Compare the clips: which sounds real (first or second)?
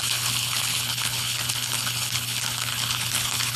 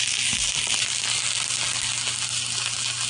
second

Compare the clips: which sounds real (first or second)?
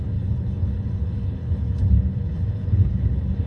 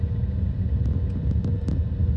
second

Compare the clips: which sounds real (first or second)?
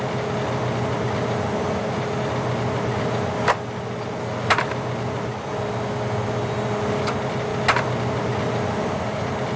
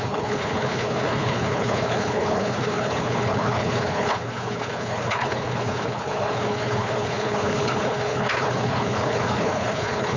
first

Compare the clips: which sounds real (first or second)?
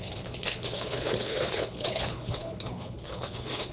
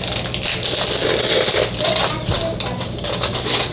second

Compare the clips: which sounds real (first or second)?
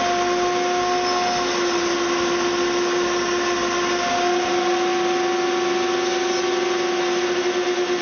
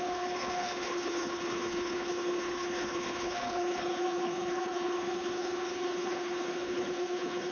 first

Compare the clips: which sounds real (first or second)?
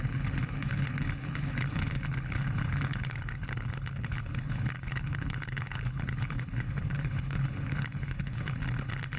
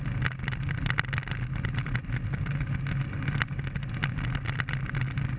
second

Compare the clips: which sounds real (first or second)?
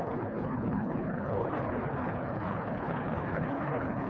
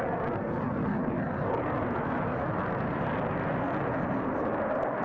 second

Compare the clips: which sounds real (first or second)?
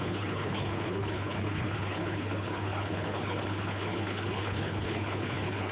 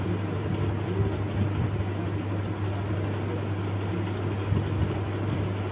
second